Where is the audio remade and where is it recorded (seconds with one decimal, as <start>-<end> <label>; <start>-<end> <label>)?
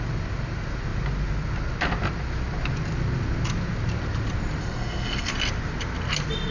0.0-4.6 recorded; 4.6-5.3 remade; 5.3-6.5 recorded